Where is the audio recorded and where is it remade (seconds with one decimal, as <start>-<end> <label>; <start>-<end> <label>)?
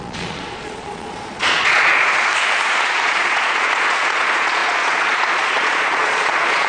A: 0.0-2.3 remade; 2.3-3.0 recorded; 3.0-6.7 remade